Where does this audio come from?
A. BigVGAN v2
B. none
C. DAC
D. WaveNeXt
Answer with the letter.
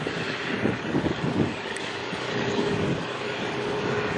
C